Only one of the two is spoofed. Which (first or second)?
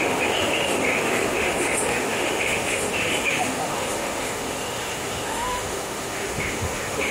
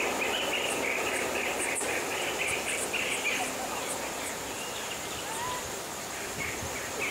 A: first